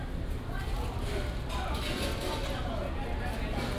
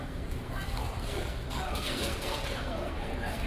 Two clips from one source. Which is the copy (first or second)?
second